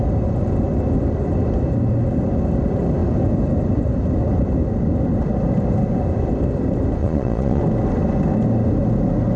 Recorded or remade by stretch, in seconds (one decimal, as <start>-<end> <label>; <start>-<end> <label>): 0.0-7.0 recorded; 7.0-7.6 remade; 7.6-9.4 recorded